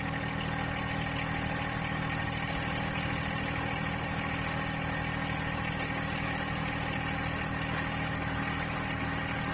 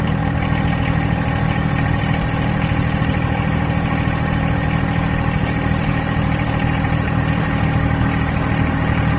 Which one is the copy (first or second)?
second